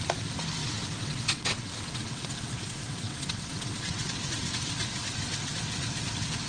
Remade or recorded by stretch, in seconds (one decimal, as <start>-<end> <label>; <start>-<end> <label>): 0.0-0.6 recorded; 0.6-4.5 remade; 4.5-6.5 recorded